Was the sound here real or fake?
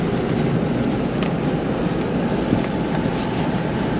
real